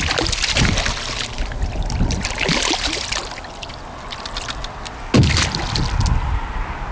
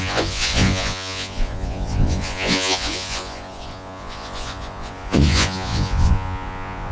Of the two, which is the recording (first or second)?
first